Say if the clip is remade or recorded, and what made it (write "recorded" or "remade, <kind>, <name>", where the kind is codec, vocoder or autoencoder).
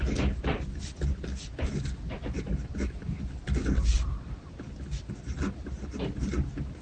recorded